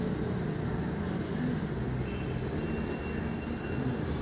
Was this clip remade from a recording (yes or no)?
no